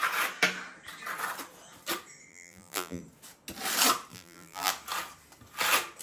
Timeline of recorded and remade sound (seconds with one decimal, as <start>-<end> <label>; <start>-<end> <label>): 0.0-2.3 recorded; 2.3-3.0 remade; 3.0-4.1 recorded; 4.1-4.7 remade; 4.7-6.0 recorded